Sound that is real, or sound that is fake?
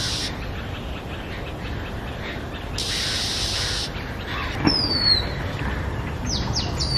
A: fake